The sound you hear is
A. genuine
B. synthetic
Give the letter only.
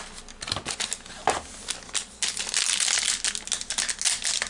A